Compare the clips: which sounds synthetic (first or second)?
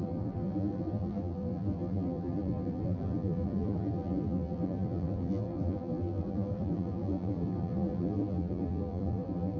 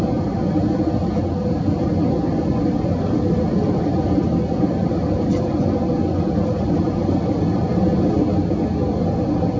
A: first